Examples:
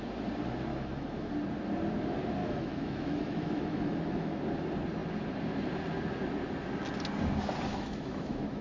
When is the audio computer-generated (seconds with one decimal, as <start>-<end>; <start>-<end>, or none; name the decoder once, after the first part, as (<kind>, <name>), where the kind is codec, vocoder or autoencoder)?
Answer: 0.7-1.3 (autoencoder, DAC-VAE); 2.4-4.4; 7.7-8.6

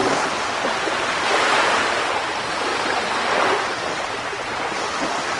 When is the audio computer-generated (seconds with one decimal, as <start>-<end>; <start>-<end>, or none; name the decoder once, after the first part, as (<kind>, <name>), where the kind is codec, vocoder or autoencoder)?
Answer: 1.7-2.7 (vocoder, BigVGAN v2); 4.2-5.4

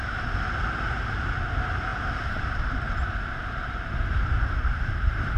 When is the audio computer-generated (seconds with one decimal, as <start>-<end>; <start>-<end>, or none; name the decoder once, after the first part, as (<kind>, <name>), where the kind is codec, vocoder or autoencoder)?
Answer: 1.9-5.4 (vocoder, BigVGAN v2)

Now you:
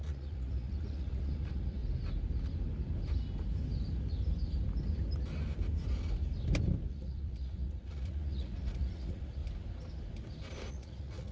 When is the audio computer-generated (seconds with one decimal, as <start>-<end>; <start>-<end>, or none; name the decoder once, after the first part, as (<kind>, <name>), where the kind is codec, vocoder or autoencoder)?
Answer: 0.0-1.8 (vocoder, Vocos); 6.9-9.4; 10.7-11.3

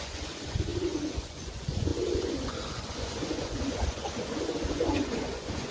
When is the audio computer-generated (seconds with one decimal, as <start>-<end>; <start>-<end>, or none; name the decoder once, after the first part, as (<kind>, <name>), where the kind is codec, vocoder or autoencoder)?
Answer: 0.0-5.7 (vocoder, Vocos)

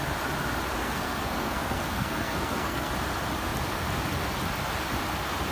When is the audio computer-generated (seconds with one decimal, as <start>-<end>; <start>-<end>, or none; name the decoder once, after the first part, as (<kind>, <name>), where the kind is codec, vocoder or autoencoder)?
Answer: 0.8-2.9 (codec, SNAC)

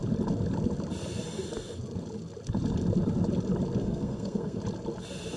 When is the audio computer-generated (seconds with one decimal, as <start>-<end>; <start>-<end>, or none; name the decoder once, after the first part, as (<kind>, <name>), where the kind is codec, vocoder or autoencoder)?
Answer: 3.8-4.6 (codec, SNAC)

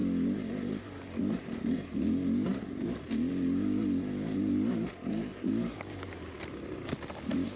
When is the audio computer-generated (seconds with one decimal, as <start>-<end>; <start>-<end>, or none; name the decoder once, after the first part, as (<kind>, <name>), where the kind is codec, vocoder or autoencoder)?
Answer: none